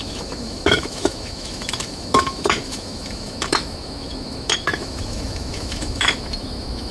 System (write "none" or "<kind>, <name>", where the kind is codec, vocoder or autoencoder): autoencoder, DAC-VAE